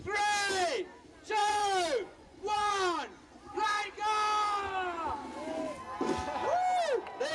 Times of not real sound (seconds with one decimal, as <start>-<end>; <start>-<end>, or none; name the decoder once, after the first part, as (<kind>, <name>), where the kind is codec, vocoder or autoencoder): 1.4-3.9 (vocoder, Vocos)